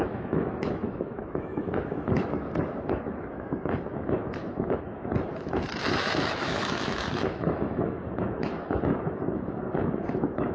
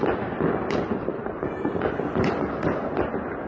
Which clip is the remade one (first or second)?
first